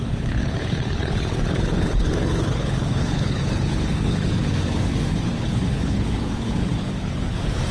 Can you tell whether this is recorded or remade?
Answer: remade